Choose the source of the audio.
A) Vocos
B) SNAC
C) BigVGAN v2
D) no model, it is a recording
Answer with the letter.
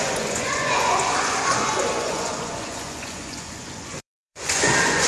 A